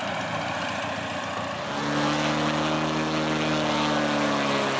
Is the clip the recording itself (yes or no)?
yes